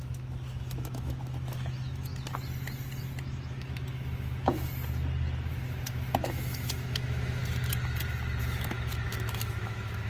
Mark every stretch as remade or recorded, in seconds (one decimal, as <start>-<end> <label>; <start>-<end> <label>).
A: 0.0-2.1 remade; 2.1-3.2 recorded; 3.2-4.7 remade; 4.7-5.5 recorded; 5.5-7.4 remade; 7.4-8.4 recorded; 8.4-10.1 remade